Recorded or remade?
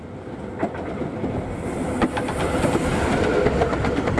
recorded